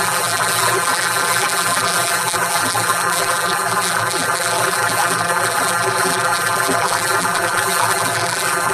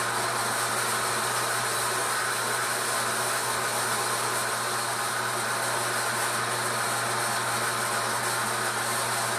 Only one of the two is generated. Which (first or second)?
first